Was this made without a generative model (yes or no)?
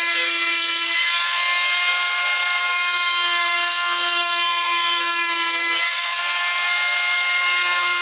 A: no